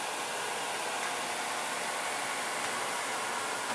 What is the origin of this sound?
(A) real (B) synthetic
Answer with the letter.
A